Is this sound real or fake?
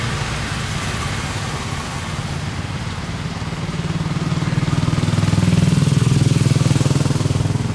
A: real